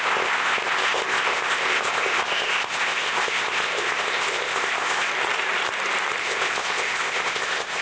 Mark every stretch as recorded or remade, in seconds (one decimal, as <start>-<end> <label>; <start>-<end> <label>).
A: 0.0-5.1 remade; 5.1-6.2 recorded; 6.2-7.8 remade